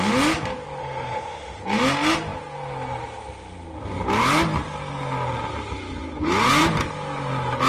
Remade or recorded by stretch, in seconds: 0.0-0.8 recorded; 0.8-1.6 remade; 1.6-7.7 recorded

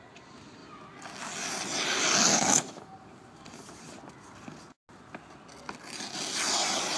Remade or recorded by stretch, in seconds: 0.0-2.3 recorded; 2.3-2.9 remade; 2.9-7.0 recorded

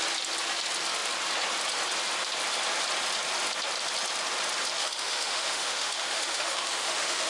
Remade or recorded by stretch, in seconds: 0.0-4.8 recorded; 4.8-7.3 remade

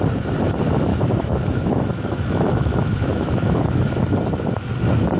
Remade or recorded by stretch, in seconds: 0.0-0.9 recorded; 0.9-4.0 remade; 4.0-5.2 recorded

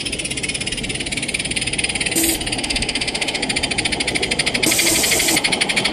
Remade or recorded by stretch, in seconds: 0.0-2.6 recorded; 2.6-3.4 remade; 3.4-5.9 recorded

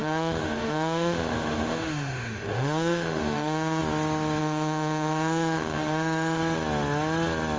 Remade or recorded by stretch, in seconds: 0.0-3.8 remade; 3.8-4.4 recorded; 4.4-6.4 remade; 6.4-7.6 recorded

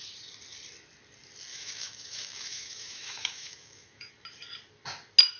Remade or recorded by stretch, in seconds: 0.0-1.5 recorded; 1.5-4.1 remade; 4.1-5.4 recorded